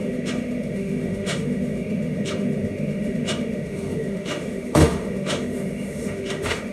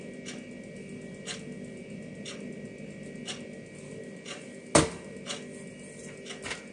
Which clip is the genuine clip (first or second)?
second